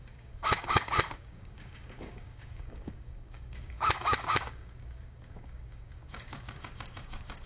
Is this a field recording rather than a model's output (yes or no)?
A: no